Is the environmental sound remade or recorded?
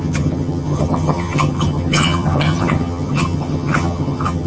remade